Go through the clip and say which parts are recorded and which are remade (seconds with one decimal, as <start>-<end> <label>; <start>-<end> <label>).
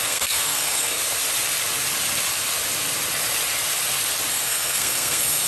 0.0-1.0 remade; 1.0-4.3 recorded; 4.3-5.5 remade